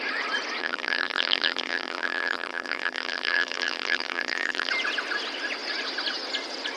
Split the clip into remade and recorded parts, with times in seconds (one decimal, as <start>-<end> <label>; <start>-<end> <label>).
0.0-0.6 recorded; 0.6-4.7 remade; 4.7-6.8 recorded